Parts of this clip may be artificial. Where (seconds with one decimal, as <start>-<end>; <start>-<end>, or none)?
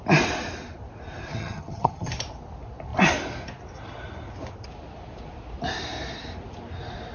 1.3-2.1